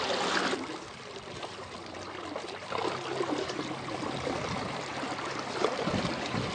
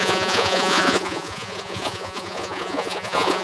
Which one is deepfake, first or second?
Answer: second